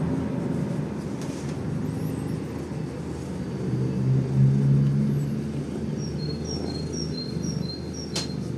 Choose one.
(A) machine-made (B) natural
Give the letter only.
B